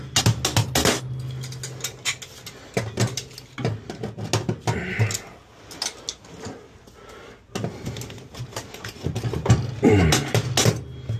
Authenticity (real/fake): real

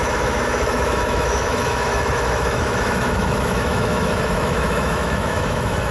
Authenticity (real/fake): fake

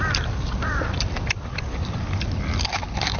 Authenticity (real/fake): fake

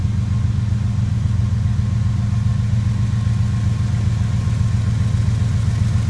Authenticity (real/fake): real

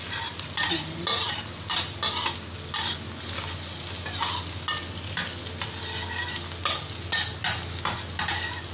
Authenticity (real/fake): real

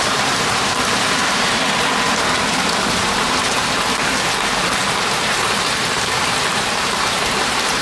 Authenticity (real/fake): fake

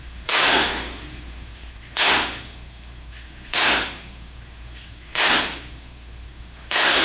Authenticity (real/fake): fake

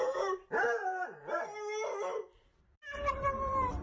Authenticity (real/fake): fake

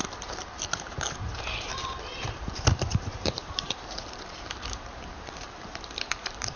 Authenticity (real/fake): fake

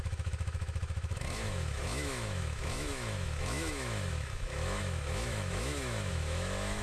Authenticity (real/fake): fake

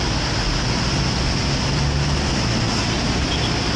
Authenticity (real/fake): real